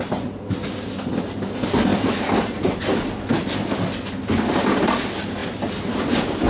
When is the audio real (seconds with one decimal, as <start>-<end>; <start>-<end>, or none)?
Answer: 0.0-6.5